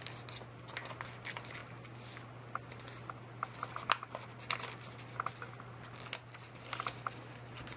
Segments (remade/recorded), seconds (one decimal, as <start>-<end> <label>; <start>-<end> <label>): 0.0-7.8 recorded